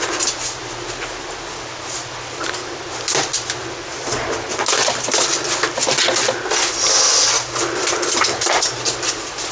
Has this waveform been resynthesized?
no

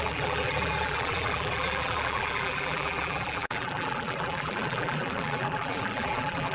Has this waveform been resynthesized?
yes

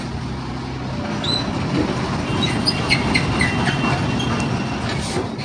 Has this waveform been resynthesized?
no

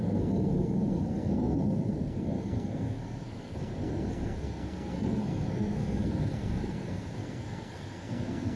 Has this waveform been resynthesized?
yes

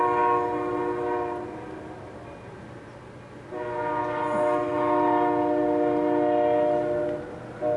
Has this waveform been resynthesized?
no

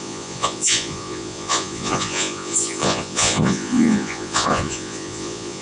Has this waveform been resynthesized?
yes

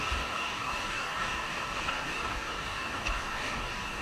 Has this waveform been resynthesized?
yes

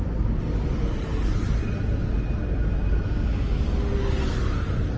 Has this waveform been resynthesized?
no